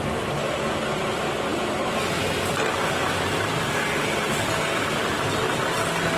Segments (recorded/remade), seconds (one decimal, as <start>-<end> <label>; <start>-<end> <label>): 0.0-6.2 recorded

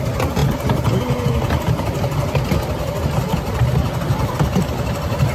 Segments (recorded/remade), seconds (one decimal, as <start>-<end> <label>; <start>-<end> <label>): 0.0-5.3 recorded